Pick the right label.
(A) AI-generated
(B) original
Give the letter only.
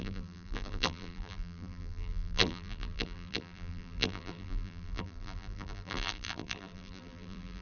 A